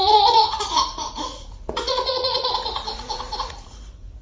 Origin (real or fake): fake